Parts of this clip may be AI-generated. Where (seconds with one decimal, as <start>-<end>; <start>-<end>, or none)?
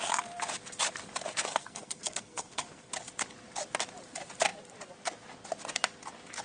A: 1.5-2.9